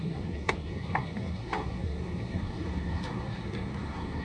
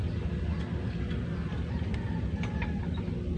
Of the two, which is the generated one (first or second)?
first